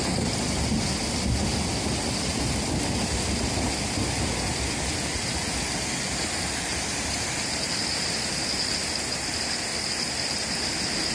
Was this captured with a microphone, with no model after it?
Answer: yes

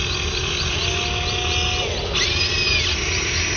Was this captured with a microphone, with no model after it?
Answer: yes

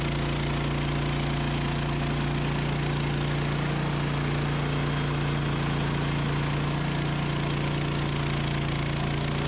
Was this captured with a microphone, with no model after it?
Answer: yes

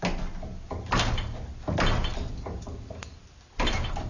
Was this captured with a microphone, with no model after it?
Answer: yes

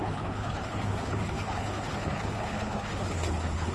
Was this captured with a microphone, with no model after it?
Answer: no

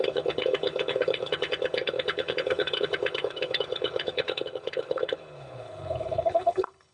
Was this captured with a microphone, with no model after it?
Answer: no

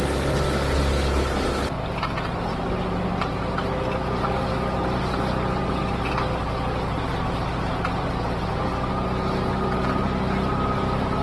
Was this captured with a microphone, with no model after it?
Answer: yes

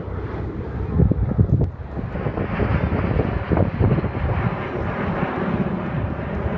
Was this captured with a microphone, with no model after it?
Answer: yes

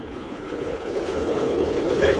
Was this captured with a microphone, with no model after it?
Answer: no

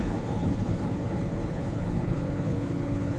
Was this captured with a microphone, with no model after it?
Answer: no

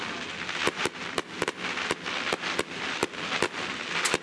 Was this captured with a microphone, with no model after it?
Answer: yes